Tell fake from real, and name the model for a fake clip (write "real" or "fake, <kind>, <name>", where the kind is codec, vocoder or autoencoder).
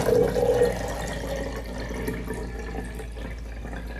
real